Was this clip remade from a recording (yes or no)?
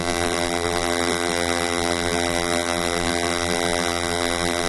yes